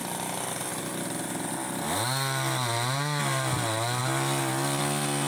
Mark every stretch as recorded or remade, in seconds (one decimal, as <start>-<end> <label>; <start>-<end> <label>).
0.0-5.3 recorded